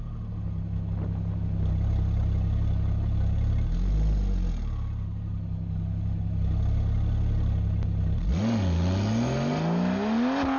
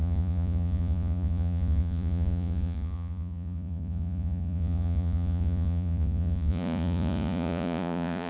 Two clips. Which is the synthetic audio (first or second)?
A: second